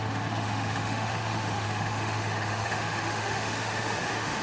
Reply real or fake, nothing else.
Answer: fake